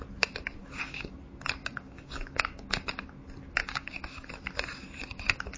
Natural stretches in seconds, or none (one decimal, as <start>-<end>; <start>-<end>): 0.0-0.6; 1.2-1.6; 2.9-3.6; 4.3-5.6